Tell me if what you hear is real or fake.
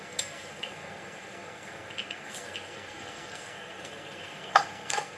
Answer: fake